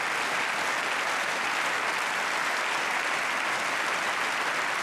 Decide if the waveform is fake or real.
real